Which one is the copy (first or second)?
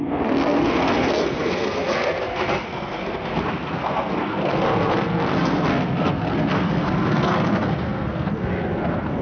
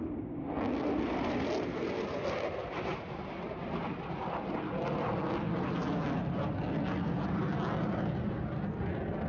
first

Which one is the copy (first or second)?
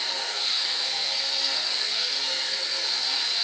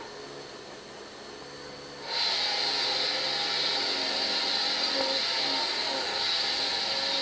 first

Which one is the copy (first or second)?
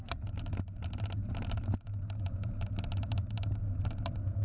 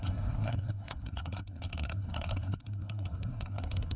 second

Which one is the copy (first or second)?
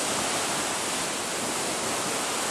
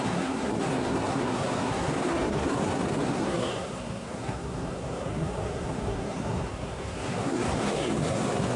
second